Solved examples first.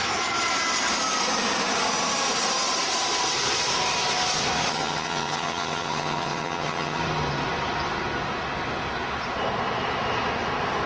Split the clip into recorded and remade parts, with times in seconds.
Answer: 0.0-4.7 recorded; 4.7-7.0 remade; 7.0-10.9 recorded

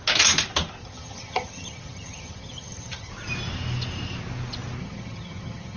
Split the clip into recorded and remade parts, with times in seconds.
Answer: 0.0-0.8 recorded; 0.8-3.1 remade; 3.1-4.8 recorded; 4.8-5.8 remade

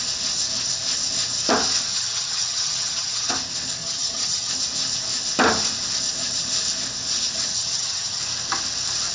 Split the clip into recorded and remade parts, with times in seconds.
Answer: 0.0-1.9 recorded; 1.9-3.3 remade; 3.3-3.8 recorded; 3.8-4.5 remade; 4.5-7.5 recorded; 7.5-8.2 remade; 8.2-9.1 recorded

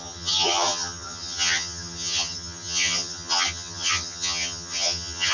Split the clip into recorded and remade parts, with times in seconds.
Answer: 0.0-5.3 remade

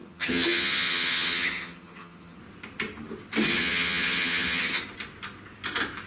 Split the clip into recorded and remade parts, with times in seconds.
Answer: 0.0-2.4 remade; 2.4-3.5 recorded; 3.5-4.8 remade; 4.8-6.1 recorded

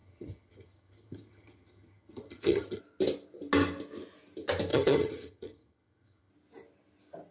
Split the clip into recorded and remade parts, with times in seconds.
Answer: 0.0-2.8 remade; 2.8-4.7 recorded; 4.7-6.3 remade; 6.3-7.3 recorded

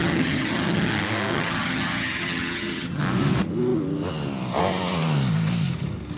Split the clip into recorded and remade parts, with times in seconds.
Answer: 0.0-0.9 remade; 0.9-1.3 recorded; 1.3-3.0 remade; 3.0-6.2 recorded